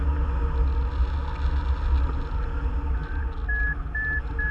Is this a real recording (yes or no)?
yes